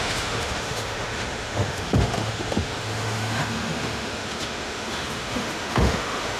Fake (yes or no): yes